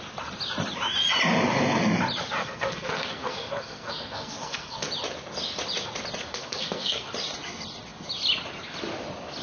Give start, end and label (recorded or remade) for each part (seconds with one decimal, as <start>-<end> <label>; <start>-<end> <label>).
0.0-2.4 recorded; 2.4-4.9 remade; 4.9-6.3 recorded; 6.3-7.1 remade; 7.1-9.4 recorded